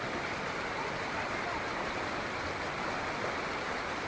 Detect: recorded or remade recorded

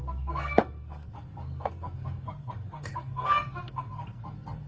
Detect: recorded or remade remade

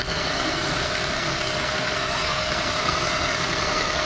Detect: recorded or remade remade